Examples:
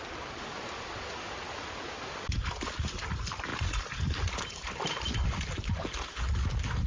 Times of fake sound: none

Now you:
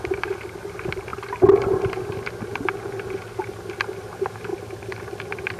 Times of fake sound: 1.1-2.3; 4.5-5.6

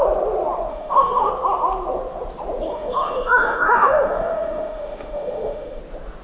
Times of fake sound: 0.7-1.3; 2.7-5.8

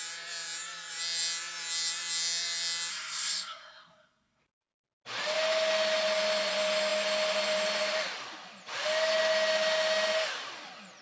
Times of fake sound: 2.9-4.4

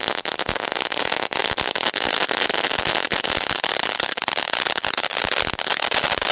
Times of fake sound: none